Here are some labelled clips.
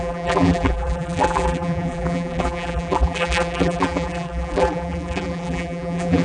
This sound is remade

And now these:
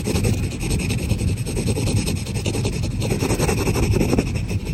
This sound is recorded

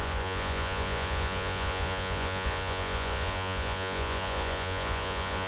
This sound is remade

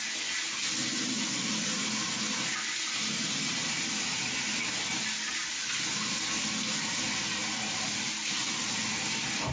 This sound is recorded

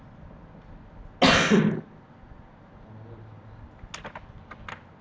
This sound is recorded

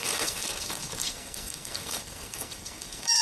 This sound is remade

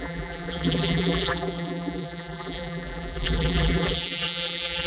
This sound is remade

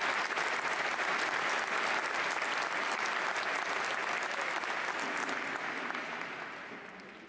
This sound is recorded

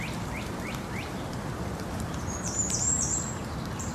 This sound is remade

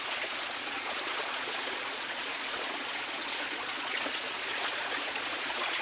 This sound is remade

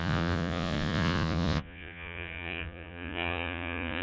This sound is remade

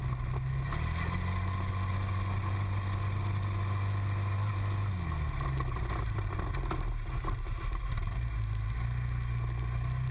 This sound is recorded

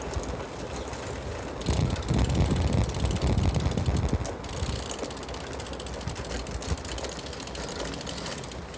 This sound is recorded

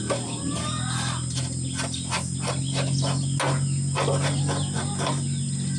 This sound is recorded